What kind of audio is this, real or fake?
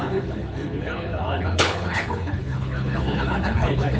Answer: fake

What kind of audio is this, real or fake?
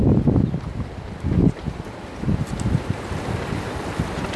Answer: real